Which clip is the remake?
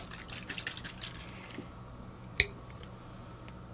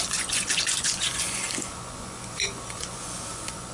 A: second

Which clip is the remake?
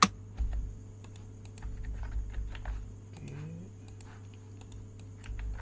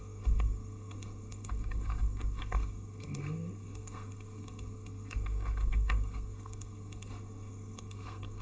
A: second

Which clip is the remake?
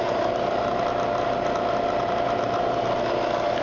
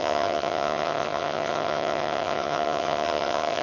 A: second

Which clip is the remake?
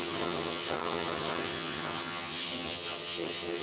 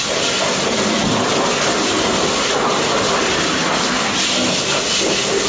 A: first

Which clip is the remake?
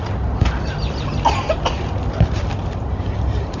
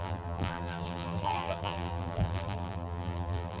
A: second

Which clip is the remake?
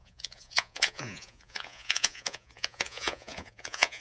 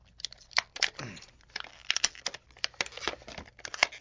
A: first